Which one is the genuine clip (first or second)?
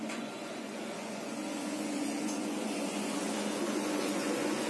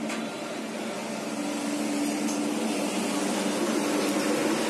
second